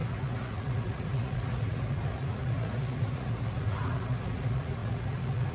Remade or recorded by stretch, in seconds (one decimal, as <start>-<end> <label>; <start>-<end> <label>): 0.0-5.5 remade